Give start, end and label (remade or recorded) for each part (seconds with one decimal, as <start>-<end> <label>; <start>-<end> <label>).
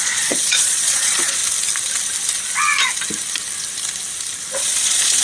0.0-1.4 remade; 1.4-4.5 recorded; 4.5-5.2 remade